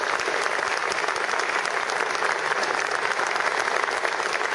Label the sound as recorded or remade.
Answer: recorded